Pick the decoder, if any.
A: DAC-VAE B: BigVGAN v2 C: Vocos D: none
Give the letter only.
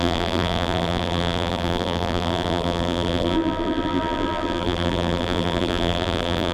B